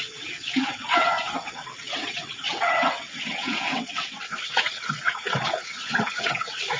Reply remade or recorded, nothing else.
remade